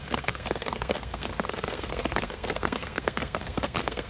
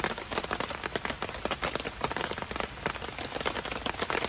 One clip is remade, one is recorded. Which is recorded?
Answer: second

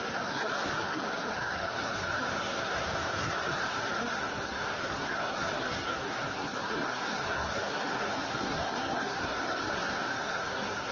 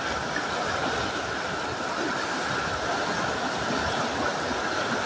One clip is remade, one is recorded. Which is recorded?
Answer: second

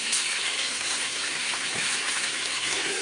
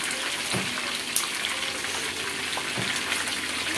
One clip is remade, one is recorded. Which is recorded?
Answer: second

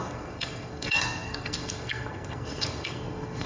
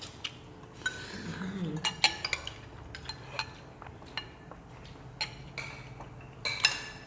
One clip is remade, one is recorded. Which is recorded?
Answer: second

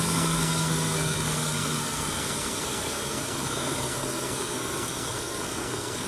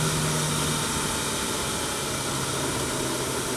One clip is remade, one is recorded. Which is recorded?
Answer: second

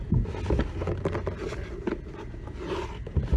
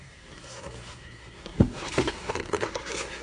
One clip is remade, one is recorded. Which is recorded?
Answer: first